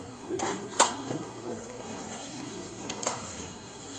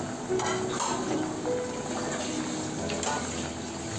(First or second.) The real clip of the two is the second